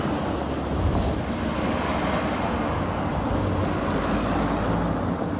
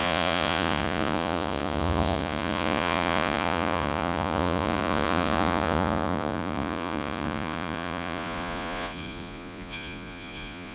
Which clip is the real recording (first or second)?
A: first